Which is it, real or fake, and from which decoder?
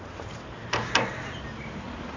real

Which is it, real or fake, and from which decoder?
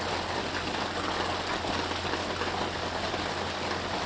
real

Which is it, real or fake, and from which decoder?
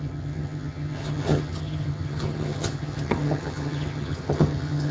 fake, vocoder, HiFi-GAN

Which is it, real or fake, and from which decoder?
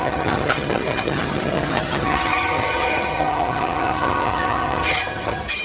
fake, vocoder, HiFi-GAN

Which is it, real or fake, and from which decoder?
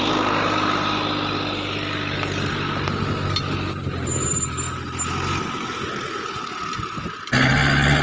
real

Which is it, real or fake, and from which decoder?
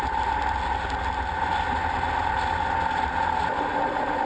real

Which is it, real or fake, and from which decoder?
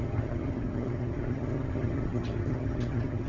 fake, vocoder, HiFi-GAN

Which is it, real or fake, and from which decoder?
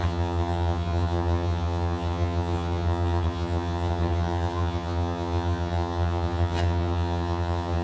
fake, vocoder, HiFi-GAN